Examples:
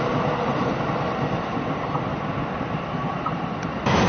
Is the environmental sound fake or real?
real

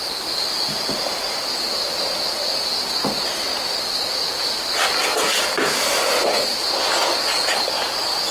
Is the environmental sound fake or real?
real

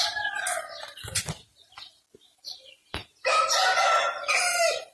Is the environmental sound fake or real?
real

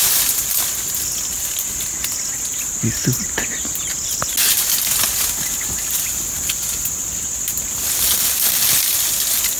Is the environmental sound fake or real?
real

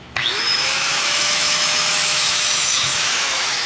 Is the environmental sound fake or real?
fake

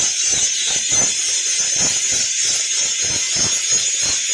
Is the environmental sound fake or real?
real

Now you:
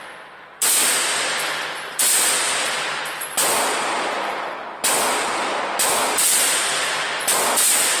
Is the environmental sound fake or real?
real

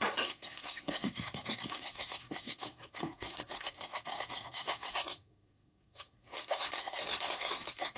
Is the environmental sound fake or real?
fake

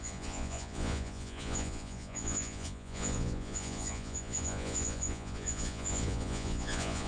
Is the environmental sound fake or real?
fake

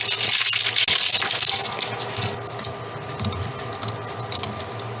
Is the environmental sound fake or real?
real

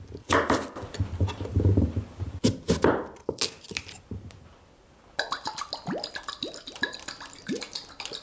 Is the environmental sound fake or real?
real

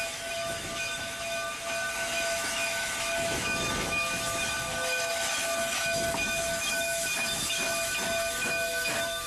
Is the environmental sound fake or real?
fake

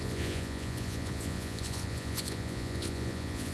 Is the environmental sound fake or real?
fake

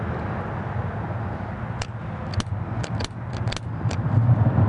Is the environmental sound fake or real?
real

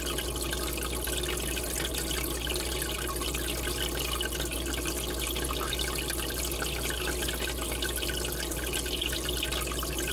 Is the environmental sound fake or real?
real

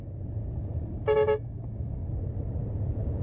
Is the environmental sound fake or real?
real